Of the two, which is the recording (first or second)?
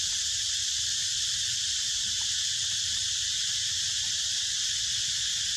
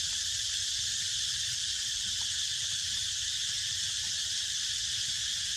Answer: first